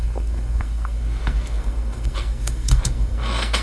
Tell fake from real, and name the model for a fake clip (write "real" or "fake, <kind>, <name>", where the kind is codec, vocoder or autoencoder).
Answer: fake, codec, SNAC